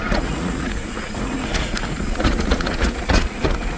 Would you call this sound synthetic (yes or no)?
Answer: yes